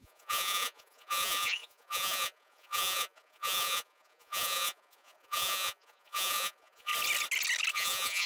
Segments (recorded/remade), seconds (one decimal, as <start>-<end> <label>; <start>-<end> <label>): 0.0-6.9 remade; 6.9-7.7 recorded; 7.7-8.3 remade